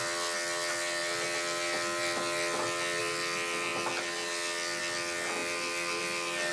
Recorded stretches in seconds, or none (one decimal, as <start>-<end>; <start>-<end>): 0.0-6.5

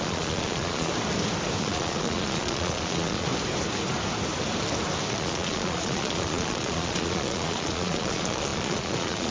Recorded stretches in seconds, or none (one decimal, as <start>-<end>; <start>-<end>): 0.9-1.6; 3.3-5.1

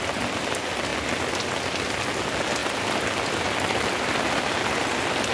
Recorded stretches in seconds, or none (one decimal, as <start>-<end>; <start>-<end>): 0.0-2.6; 4.2-5.3

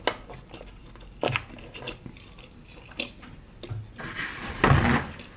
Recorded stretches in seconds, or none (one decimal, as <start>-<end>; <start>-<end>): 0.0-5.4

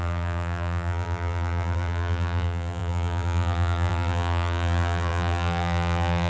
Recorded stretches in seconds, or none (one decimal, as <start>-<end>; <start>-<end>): none